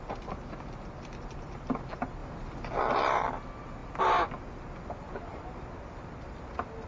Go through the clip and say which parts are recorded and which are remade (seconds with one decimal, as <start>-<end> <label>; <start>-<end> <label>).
0.0-6.9 recorded